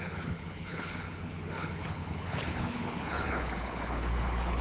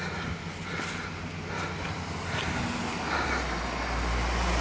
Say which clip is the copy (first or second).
first